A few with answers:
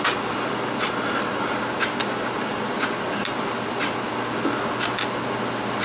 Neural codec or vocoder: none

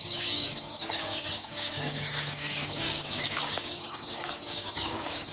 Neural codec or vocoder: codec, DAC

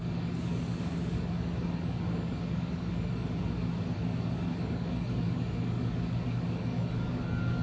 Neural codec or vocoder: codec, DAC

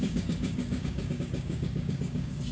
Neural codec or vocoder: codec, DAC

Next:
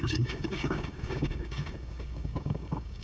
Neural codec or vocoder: codec, DAC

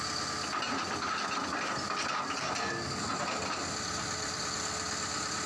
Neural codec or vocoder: none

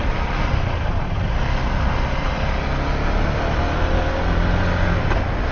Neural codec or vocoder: none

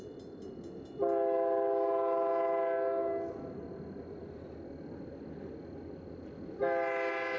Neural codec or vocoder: none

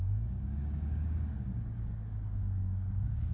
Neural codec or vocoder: codec, DAC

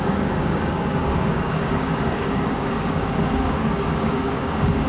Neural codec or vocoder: codec, DAC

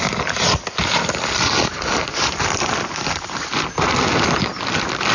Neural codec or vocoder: none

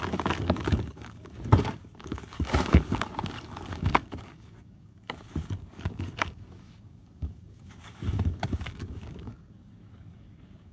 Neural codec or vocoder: codec, DAC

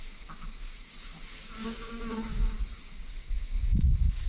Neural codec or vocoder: codec, DAC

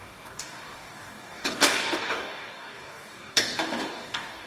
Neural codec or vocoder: codec, DAC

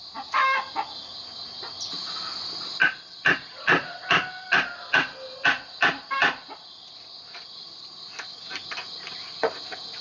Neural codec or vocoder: none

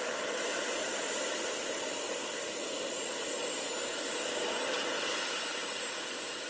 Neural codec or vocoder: none